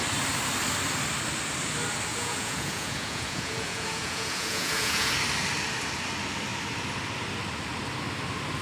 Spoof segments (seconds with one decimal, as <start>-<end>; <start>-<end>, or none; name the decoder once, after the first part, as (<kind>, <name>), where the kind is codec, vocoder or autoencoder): 2.1-5.1 (vocoder, Vocos)